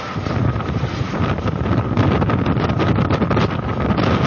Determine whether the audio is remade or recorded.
recorded